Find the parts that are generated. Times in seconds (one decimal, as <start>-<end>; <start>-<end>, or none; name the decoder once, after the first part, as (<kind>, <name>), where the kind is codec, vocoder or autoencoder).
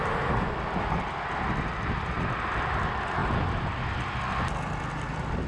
none